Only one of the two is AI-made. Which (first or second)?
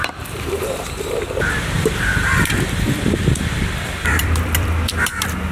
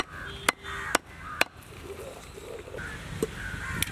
first